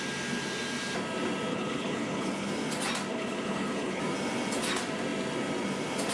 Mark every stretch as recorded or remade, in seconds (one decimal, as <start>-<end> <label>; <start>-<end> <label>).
0.0-1.5 recorded; 1.5-2.5 remade; 2.5-3.1 recorded; 3.1-4.0 remade; 4.0-6.1 recorded